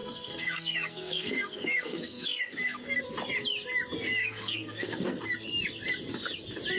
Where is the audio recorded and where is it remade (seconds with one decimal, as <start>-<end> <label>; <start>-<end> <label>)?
0.0-3.0 remade; 3.0-4.2 recorded; 4.2-5.2 remade; 5.2-6.8 recorded